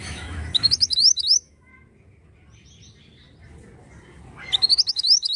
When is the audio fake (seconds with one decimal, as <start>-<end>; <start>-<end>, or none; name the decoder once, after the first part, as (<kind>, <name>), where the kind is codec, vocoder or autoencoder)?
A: 0.0-1.7 (autoencoder, DAC-VAE); 4.9-5.4